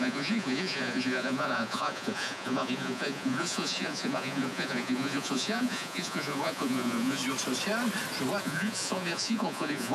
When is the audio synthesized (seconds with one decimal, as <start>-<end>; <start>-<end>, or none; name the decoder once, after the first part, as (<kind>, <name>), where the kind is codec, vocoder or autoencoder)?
0.0-7.2 (vocoder, Vocos); 8.4-9.9